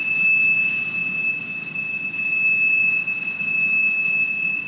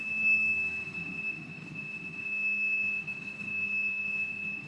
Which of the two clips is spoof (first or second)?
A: second